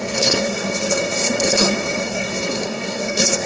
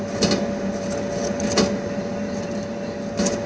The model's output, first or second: first